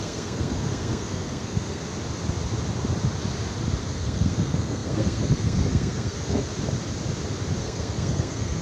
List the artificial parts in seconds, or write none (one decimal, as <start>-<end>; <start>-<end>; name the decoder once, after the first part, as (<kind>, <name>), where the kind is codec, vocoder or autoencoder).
0.0-1.8 (codec, SNAC); 3.8-6.5; 7.6-8.6